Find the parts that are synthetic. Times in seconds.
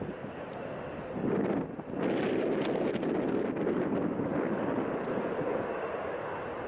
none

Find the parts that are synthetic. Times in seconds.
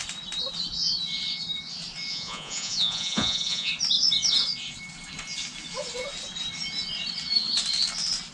2.1-3.7 (vocoder, Vocos)